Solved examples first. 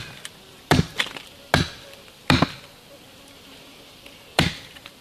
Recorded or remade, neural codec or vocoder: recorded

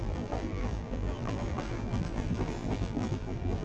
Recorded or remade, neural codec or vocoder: remade, vocoder, BigVGAN v2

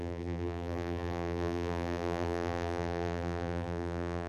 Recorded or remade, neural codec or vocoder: remade, vocoder, BigVGAN v2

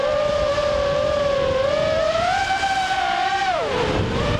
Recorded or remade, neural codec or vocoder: remade, vocoder, BigVGAN v2